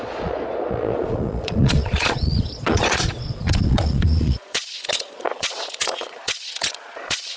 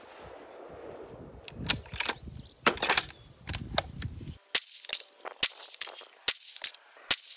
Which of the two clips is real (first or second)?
second